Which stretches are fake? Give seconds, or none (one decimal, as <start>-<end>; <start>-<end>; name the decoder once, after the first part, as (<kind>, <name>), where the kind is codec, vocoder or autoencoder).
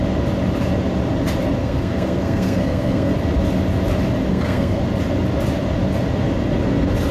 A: 1.6-3.1 (codec, SNAC); 4.3-4.8